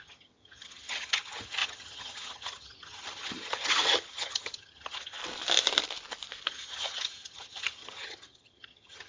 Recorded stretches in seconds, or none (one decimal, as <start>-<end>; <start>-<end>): 5.2-6.5